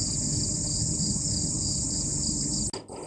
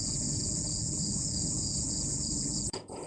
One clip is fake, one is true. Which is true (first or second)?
first